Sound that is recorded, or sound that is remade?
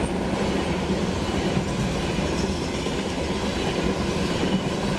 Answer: recorded